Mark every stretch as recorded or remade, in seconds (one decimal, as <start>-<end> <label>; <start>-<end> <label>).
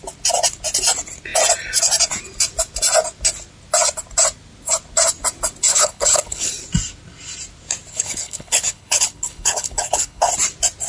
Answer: 0.0-5.7 recorded; 5.7-6.5 remade; 6.5-7.9 recorded; 7.9-10.3 remade; 10.3-10.9 recorded